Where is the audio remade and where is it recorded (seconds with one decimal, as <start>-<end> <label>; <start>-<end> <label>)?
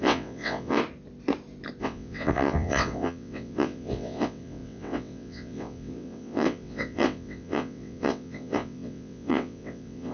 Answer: 0.0-0.8 remade; 0.8-1.8 recorded; 1.8-10.1 remade